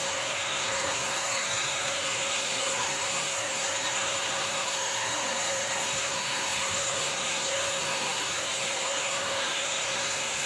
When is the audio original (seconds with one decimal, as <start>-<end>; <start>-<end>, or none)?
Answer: none